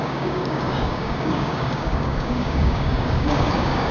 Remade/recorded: remade